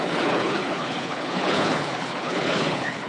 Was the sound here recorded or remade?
remade